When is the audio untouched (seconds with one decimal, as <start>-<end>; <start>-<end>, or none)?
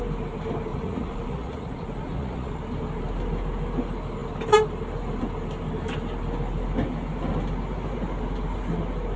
0.0-0.7; 2.6-9.2